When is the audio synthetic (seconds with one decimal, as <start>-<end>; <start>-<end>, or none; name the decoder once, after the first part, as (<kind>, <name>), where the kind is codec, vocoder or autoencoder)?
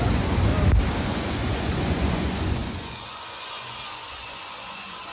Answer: 0.0-0.5 (vocoder, Vocos); 1.0-5.1